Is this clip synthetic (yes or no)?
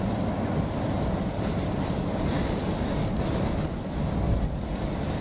no